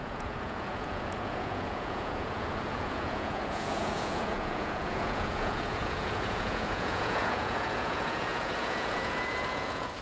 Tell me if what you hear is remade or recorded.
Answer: remade